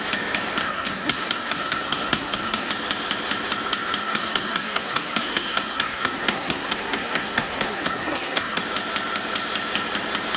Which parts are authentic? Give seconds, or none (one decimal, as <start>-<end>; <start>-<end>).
0.0-0.6; 2.7-4.0; 8.6-10.4